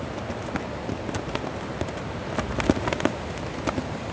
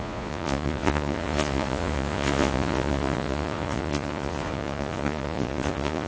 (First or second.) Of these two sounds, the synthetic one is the second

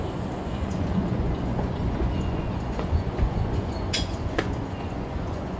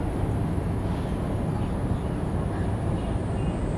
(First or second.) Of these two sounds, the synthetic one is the first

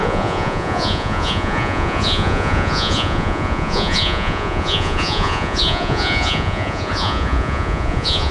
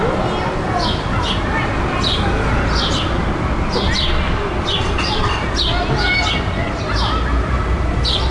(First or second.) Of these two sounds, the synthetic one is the first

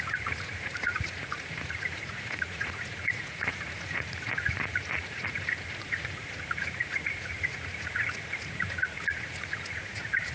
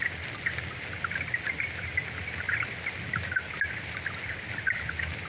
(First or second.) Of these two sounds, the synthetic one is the first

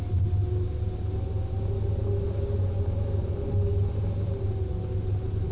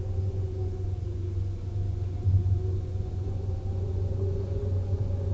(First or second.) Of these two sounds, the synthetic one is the second